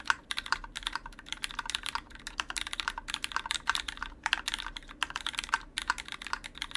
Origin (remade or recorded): recorded